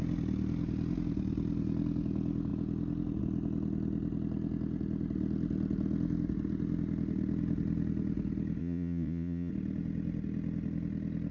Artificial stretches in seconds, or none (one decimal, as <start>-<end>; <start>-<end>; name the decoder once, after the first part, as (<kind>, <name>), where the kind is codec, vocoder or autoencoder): 8.6-9.5 (vocoder, Vocos)